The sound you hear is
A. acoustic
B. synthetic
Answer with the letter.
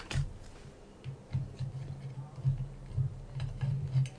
A